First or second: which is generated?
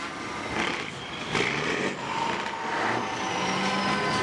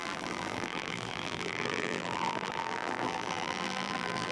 second